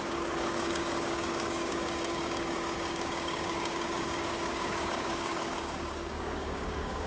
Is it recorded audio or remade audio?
remade